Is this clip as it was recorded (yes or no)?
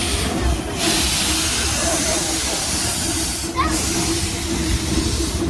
no